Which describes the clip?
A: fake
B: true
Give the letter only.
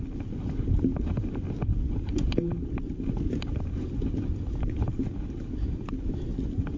B